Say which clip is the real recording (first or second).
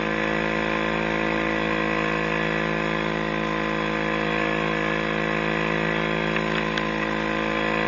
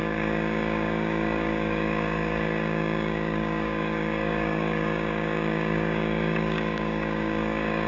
first